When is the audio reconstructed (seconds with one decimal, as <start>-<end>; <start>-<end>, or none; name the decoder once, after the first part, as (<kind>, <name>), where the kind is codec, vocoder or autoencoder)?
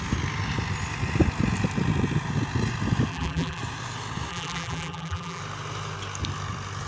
3.1-3.6 (vocoder, BigVGAN v2); 4.3-5.4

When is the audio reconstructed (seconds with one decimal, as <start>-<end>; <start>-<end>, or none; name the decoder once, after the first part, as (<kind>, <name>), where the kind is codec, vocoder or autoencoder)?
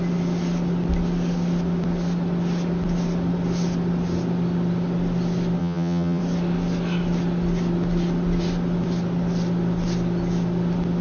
5.6-6.2 (vocoder, HiFi-GAN)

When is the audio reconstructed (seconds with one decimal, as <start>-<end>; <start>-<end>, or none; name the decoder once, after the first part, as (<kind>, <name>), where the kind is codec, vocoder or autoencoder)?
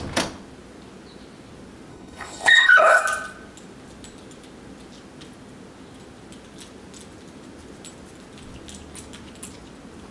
1.9-3.0 (codec, HILCodec)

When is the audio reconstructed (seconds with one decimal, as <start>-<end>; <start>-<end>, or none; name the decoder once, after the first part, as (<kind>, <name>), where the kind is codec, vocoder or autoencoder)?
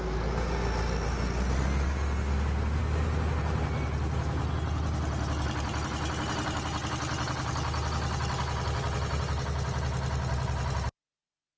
none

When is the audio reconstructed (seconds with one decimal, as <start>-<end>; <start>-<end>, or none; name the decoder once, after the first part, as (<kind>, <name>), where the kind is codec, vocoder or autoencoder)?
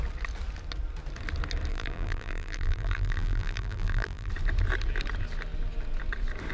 1.7-4.3 (vocoder, BigVGAN v2)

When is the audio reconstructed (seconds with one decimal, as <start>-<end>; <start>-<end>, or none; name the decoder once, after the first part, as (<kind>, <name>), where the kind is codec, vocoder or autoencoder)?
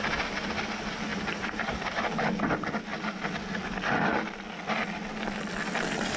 1.1-2.0 (vocoder, BigVGAN v2)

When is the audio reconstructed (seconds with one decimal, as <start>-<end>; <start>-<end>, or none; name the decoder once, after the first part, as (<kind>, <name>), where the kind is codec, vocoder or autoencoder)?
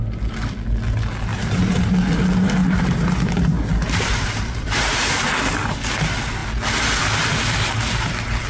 1.3-1.9 (vocoder, BigVGAN v2); 2.6-5.3